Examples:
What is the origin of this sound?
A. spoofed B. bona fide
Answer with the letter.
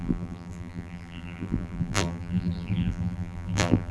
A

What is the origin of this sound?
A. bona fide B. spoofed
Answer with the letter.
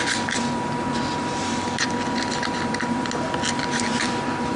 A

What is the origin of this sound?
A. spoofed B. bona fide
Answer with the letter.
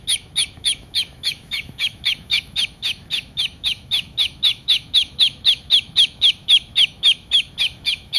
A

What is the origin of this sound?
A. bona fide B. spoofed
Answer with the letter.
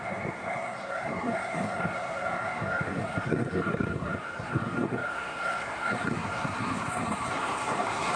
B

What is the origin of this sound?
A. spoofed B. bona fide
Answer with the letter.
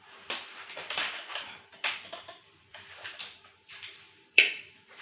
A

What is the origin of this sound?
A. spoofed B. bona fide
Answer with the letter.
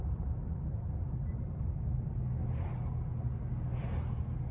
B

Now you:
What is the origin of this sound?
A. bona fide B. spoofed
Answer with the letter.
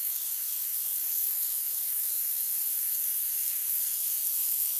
B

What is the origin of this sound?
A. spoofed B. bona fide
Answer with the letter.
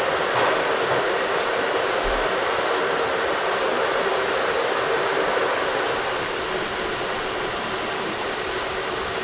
A